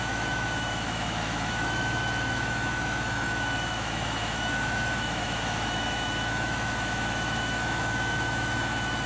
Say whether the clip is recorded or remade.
remade